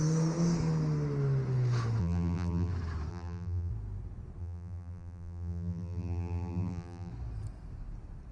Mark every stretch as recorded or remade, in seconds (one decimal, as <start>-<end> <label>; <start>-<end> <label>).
0.0-2.0 recorded; 2.0-2.7 remade; 2.7-3.1 recorded; 3.1-3.7 remade; 3.7-4.4 recorded; 4.4-7.1 remade; 7.1-8.3 recorded